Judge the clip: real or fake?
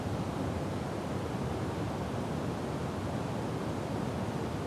real